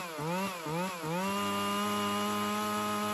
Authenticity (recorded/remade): recorded